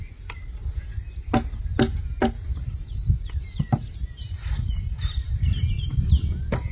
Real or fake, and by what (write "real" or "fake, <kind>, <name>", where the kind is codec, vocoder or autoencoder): real